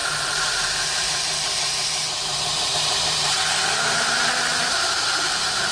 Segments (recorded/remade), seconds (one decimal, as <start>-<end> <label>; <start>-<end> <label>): 0.0-3.4 remade; 3.4-4.5 recorded; 4.5-5.7 remade